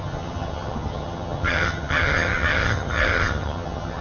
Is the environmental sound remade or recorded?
remade